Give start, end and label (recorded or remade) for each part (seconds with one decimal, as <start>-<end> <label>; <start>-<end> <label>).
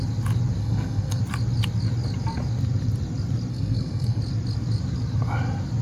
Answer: 0.0-0.6 recorded; 0.6-1.2 remade; 1.2-3.5 recorded; 3.5-4.2 remade; 4.2-5.8 recorded